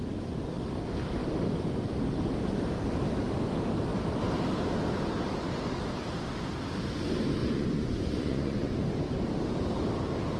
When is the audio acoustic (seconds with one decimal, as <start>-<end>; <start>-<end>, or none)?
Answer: 0.0-7.4; 8.8-10.4